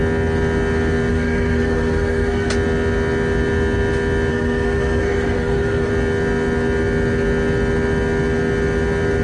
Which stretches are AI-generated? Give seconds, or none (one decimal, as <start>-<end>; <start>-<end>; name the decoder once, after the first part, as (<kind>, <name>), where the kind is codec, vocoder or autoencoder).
1.1-2.5 (codec, SNAC); 4.3-5.9